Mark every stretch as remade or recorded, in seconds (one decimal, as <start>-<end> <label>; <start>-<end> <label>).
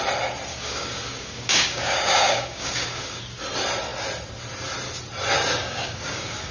0.0-0.5 recorded; 0.5-3.2 remade; 3.2-5.6 recorded; 5.6-6.5 remade